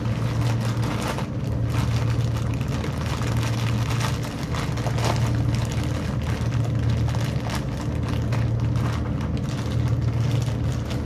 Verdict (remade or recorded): recorded